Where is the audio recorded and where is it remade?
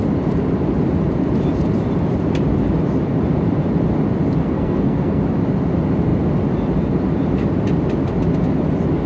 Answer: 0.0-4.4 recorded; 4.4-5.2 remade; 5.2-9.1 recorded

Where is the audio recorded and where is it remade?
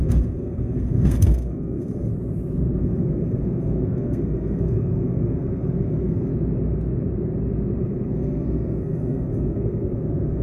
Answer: 0.0-2.1 remade; 2.1-2.8 recorded; 2.8-6.3 remade; 6.3-7.8 recorded; 7.8-10.4 remade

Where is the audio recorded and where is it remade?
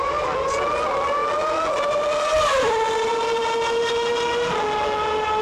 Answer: 0.0-5.4 recorded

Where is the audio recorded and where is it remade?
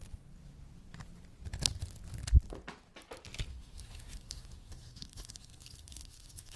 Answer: 0.0-3.5 recorded; 3.5-6.6 remade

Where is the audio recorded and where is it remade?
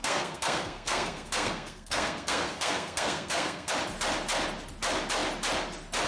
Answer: 0.0-3.7 remade; 3.7-6.1 recorded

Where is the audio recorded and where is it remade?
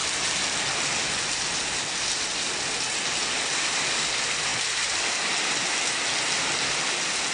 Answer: 0.0-7.3 recorded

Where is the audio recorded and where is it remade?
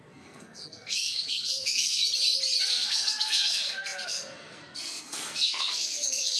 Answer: 0.0-2.0 remade; 2.0-2.6 recorded; 2.6-6.4 remade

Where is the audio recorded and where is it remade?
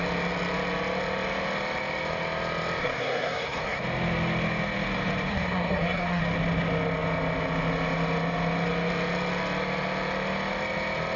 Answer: 0.0-2.8 recorded; 2.8-3.8 remade; 3.8-5.3 recorded; 5.3-6.2 remade; 6.2-11.2 recorded